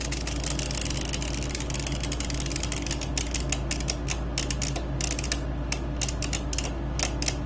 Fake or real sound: real